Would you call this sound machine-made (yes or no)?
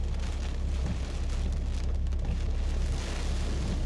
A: no